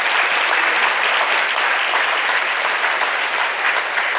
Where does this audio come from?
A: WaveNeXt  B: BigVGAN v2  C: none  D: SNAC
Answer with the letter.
C